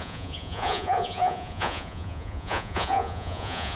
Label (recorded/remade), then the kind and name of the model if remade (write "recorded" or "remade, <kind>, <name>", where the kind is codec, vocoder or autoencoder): remade, vocoder, Vocos